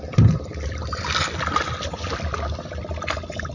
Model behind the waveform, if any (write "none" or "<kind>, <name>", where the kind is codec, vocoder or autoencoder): none